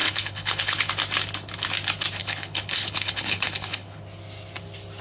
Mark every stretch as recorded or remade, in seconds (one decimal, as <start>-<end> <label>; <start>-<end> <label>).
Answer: 0.0-0.9 remade; 0.9-2.2 recorded; 2.2-4.0 remade; 4.0-5.0 recorded